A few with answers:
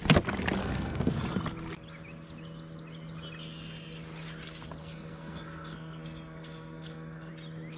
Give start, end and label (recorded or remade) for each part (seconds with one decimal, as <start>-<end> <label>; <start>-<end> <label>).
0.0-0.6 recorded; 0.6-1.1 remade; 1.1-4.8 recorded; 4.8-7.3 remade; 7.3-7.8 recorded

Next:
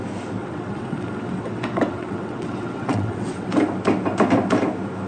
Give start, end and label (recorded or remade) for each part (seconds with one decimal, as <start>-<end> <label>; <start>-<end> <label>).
0.0-0.4 recorded; 0.4-3.5 remade; 3.5-5.1 recorded

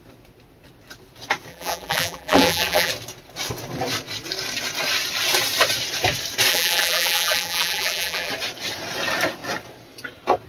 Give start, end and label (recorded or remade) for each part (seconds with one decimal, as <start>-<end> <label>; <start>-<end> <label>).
0.0-1.5 recorded; 1.5-2.9 remade; 2.9-6.5 recorded; 6.5-8.3 remade; 8.3-10.5 recorded